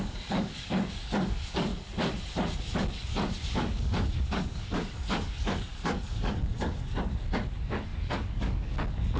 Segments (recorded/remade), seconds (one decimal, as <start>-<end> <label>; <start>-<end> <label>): 0.0-1.7 remade; 1.7-2.6 recorded; 2.6-9.2 remade